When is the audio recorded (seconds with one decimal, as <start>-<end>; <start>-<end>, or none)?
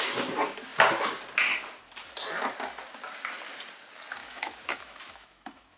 0.0-4.2